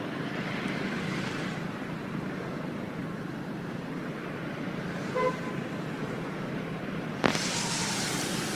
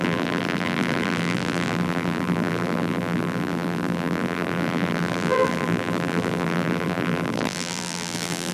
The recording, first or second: first